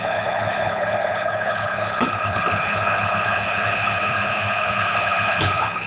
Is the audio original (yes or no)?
no